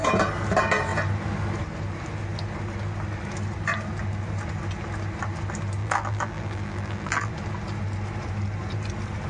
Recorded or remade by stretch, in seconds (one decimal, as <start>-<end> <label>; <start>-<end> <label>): 0.0-5.8 recorded; 5.8-7.3 remade; 7.3-9.3 recorded